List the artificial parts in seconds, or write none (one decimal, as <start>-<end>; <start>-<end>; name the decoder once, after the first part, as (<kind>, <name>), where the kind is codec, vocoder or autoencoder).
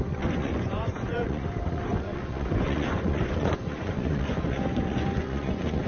0.0-5.9 (vocoder, Vocos)